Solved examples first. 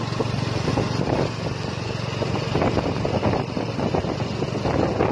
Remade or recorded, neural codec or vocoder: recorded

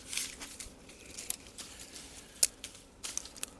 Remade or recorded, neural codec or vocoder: recorded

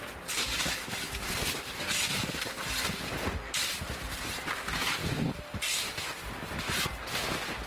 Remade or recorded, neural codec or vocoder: recorded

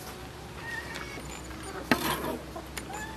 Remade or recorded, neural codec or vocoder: recorded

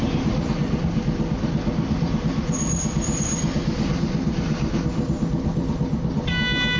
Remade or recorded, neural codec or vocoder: recorded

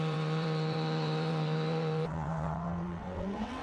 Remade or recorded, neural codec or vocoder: remade, vocoder, WaveNeXt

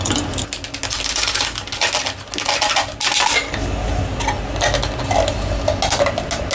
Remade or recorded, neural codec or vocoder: recorded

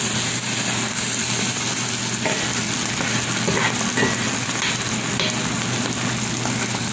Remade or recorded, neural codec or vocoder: recorded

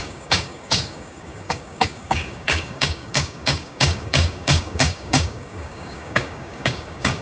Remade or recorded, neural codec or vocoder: remade, codec, DAC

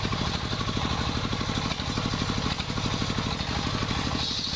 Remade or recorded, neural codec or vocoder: recorded